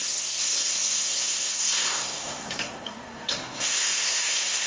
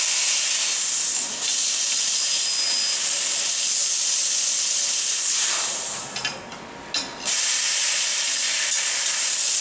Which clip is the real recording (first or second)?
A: second